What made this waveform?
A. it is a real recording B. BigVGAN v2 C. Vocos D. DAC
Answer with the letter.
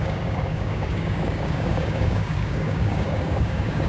D